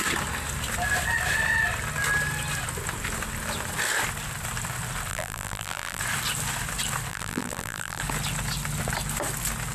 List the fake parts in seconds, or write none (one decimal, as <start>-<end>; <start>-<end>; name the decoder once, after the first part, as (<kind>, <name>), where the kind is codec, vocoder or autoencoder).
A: 5.1-6.0 (vocoder, BigVGAN v2); 7.1-8.0